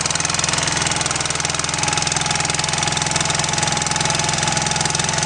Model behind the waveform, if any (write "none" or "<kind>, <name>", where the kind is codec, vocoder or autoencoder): none